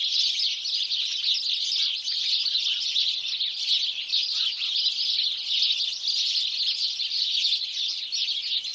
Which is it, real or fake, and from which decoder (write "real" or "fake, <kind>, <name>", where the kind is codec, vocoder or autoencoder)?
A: real